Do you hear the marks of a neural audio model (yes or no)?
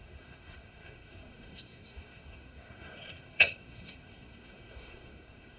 yes